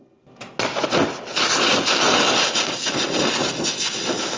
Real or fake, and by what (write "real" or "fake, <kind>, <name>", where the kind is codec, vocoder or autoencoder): real